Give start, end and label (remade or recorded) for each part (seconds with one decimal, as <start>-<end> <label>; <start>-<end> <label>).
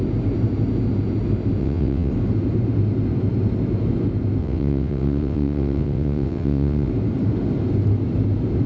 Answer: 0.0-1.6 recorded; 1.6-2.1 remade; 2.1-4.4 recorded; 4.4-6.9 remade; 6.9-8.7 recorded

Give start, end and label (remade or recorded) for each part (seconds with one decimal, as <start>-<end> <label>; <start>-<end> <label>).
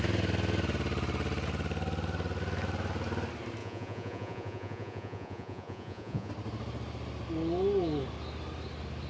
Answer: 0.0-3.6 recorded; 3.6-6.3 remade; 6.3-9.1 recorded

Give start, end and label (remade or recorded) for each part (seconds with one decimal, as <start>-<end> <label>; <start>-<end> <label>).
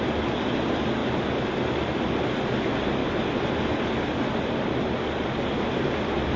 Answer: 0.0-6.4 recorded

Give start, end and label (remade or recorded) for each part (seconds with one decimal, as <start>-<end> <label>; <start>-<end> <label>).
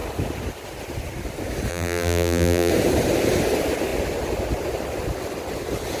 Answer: 0.0-1.7 recorded; 1.7-2.7 remade; 2.7-6.0 recorded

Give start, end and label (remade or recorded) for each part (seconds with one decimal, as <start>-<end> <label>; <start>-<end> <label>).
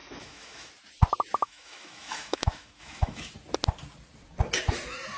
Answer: 0.0-0.7 remade; 0.7-1.4 recorded; 1.4-3.3 remade; 3.3-5.2 recorded